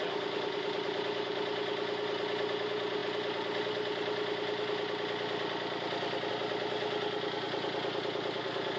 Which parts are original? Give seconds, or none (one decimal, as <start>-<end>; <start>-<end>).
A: 0.0-8.8